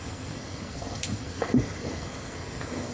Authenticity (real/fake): fake